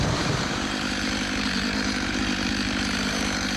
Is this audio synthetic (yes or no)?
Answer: yes